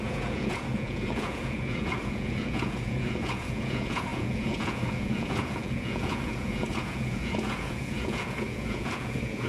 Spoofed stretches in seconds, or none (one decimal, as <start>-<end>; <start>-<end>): 0.0-9.5